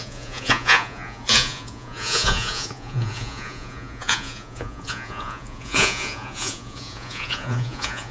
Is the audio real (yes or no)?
no